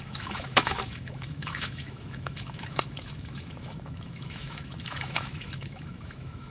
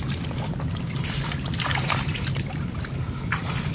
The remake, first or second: first